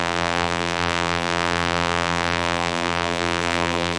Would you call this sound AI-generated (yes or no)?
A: yes